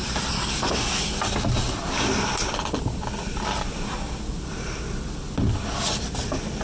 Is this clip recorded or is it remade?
recorded